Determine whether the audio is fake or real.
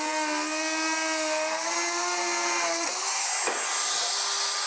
real